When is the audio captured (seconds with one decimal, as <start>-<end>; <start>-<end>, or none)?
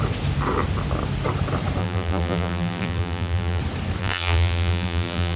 0.0-1.8; 3.6-4.0